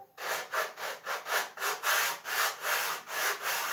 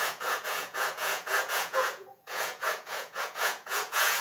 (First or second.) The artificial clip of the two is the second